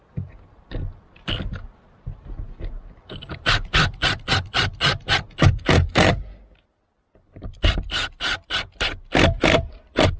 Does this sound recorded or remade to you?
recorded